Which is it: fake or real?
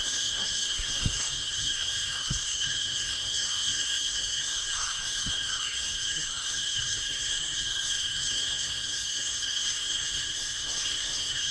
fake